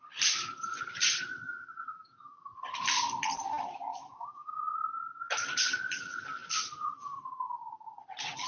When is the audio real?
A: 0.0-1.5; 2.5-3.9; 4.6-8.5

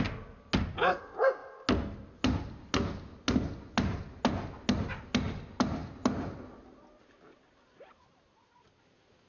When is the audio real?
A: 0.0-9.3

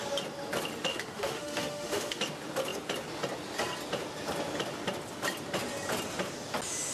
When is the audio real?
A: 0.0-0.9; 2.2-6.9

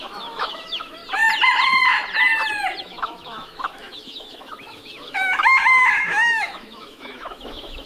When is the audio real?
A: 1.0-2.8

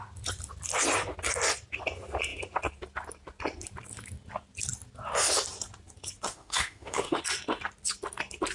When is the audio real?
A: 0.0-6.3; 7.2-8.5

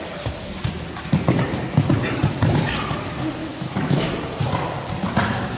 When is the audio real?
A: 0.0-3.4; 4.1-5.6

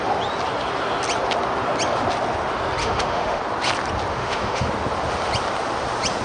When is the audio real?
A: 0.0-2.8; 3.4-4.1; 4.7-6.2